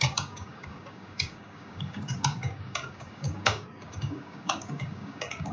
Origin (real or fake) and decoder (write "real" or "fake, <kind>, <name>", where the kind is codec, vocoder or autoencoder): fake, codec, DAC